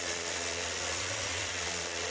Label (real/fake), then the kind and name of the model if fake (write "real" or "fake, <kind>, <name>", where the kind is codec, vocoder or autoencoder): fake, vocoder, Vocos